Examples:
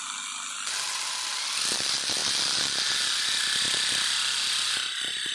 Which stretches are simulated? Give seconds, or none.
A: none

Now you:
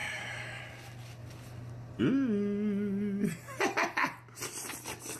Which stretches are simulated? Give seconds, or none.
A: 0.0-0.6 (autoencoder, DAC-VAE)

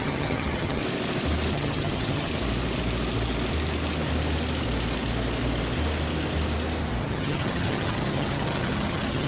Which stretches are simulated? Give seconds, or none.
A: 0.0-0.8 (vocoder, HiFi-GAN); 1.5-2.3; 7.0-9.3

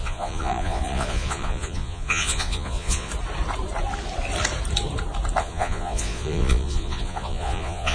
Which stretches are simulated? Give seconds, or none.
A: 0.0-3.1 (vocoder, Vocos); 5.4-7.9

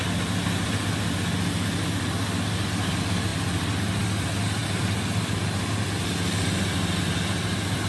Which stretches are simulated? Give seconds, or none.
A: none

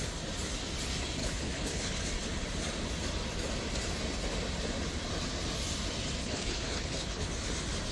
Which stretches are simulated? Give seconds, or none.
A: 1.2-2.0 (codec, HILCodec); 6.2-7.3

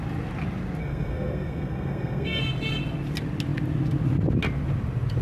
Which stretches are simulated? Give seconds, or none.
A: 0.8-2.4 (codec, SNAC)

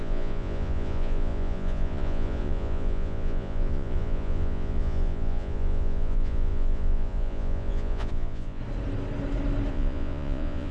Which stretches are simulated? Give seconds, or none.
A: 0.0-8.6 (vocoder, Vocos); 9.7-10.7